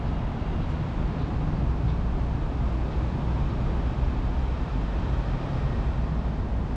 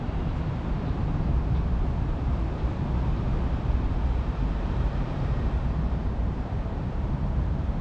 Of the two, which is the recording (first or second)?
first